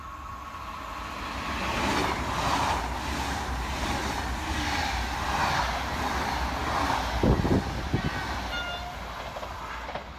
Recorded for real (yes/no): yes